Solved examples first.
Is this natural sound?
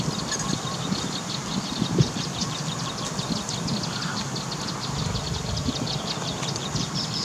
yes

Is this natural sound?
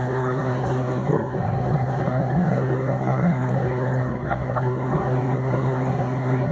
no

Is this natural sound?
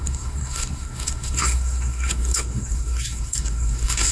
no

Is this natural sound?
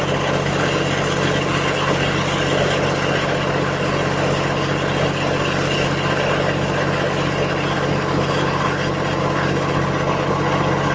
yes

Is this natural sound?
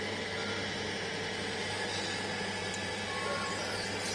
yes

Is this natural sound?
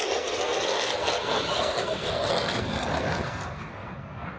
no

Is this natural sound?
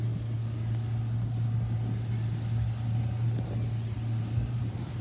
yes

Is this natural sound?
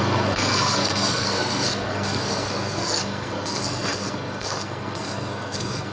no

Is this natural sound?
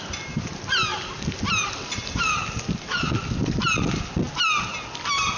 yes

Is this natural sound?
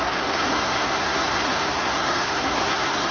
no